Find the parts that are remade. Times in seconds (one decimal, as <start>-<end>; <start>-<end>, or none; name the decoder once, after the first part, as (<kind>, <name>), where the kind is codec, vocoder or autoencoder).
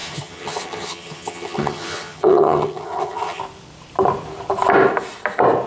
0.0-3.4 (vocoder, HiFi-GAN)